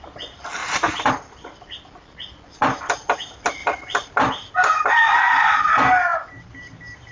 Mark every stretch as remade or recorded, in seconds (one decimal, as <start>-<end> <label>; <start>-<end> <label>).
0.0-0.6 recorded; 0.6-1.1 remade; 1.1-3.6 recorded; 3.6-4.2 remade; 4.2-6.1 recorded; 6.1-7.1 remade